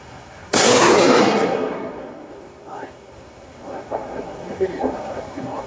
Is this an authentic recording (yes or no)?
no